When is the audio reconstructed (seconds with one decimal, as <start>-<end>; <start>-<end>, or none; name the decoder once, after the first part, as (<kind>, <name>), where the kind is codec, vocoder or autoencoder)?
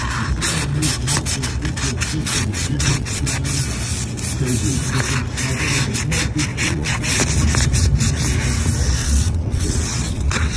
2.2-3.3 (vocoder, WaveNeXt); 6.5-7.2; 9.0-10.6